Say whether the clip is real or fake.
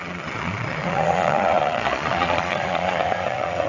fake